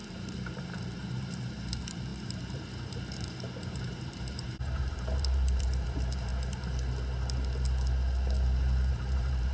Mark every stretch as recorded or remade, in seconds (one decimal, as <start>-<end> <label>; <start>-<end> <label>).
0.0-6.3 remade; 6.3-8.9 recorded; 8.9-9.5 remade

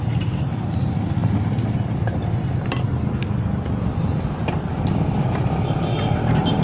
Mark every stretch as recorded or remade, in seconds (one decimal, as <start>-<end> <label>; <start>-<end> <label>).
0.0-6.6 remade

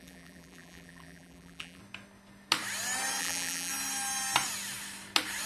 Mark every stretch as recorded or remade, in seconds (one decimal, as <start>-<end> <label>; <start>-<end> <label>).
0.0-1.8 remade; 1.8-3.2 recorded; 3.2-3.7 remade; 3.7-5.5 recorded

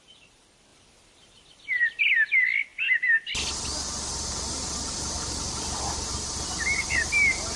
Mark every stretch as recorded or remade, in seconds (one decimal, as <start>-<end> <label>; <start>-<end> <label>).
0.0-0.7 recorded; 0.7-2.0 remade; 2.0-7.6 recorded

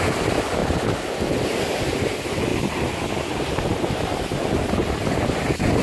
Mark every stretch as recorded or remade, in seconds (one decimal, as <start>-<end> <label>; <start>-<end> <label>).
0.0-0.6 recorded; 0.6-1.2 remade; 1.2-3.7 recorded; 3.7-5.2 remade; 5.2-5.8 recorded

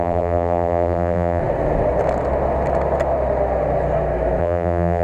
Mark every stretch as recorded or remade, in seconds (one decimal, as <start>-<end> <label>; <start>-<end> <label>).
0.0-1.4 remade; 1.4-4.4 recorded; 4.4-5.0 remade